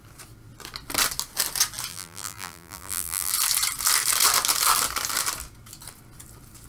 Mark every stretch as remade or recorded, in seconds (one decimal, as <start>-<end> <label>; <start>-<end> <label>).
0.0-1.9 recorded; 1.9-3.3 remade; 3.3-6.7 recorded